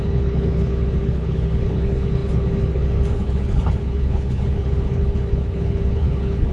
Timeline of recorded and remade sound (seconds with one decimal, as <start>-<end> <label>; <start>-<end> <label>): 0.0-6.5 remade